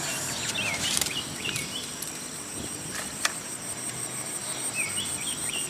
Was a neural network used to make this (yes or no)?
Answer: yes